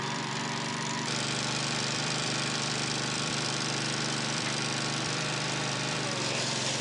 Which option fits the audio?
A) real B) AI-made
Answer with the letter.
B